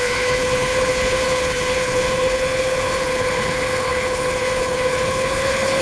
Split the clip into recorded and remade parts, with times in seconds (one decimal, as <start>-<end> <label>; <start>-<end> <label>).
0.0-5.8 remade